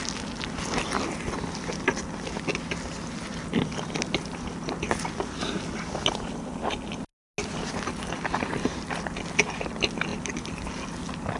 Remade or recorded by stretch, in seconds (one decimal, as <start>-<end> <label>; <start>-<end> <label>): 0.0-11.4 recorded